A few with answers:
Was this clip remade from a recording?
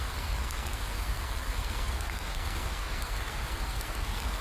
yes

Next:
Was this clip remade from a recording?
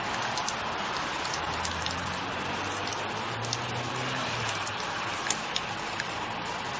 yes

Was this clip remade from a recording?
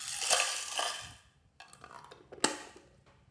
no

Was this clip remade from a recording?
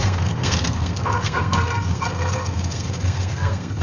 yes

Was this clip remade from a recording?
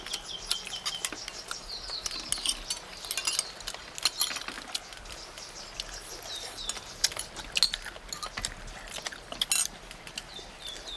no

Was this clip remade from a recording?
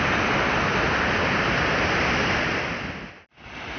no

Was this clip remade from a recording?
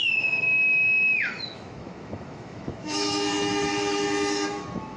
yes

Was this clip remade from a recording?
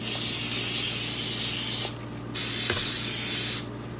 no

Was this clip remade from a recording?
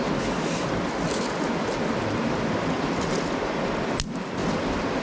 no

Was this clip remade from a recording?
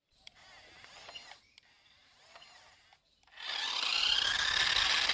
no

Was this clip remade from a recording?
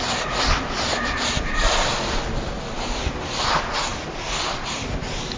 no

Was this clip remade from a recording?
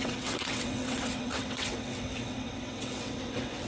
yes